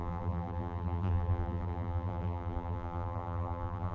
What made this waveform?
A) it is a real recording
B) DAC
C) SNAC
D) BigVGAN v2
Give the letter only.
D